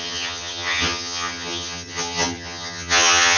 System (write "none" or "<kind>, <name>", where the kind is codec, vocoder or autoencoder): vocoder, HiFi-GAN